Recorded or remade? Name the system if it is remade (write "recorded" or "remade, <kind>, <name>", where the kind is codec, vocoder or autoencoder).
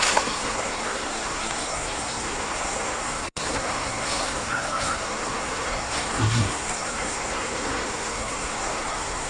remade, codec, SNAC